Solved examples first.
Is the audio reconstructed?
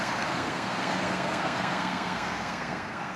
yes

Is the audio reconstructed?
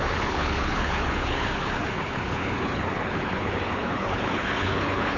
yes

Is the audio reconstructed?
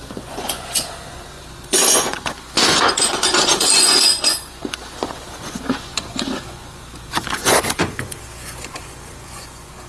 yes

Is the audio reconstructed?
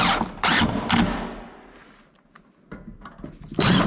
no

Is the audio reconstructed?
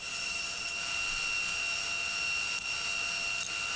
no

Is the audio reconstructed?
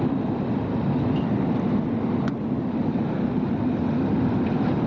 yes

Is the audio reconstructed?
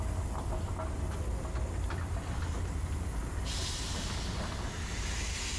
no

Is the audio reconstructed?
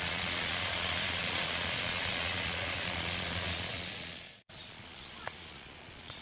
yes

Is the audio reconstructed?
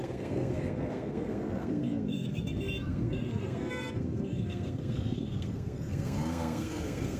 yes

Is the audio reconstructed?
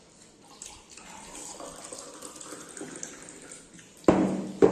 no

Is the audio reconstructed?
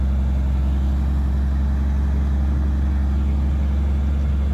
no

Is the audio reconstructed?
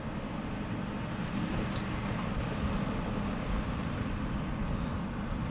no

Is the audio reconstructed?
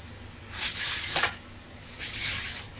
yes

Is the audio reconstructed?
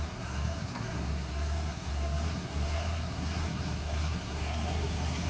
yes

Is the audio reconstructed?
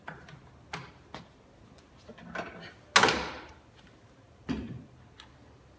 no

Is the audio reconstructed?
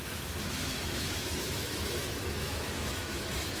yes